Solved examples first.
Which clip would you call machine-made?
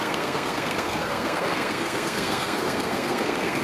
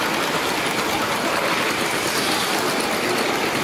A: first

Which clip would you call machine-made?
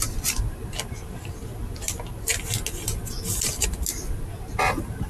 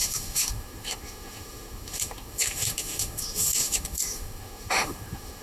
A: second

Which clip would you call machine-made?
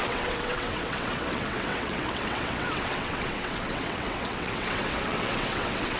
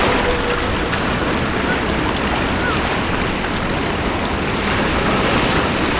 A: first